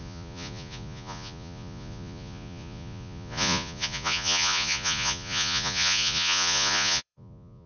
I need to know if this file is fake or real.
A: fake